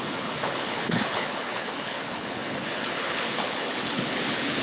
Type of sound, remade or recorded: remade